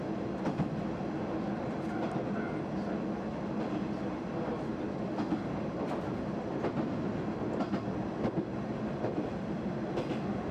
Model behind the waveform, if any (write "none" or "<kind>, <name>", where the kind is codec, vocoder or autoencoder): none